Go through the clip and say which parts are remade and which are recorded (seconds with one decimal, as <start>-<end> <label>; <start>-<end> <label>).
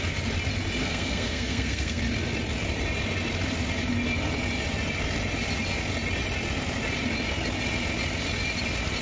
0.0-0.8 recorded; 0.8-2.0 remade; 2.0-9.0 recorded